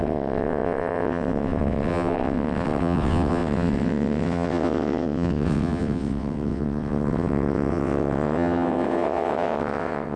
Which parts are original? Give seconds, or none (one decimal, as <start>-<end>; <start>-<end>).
none